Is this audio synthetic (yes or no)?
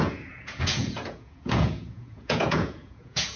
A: yes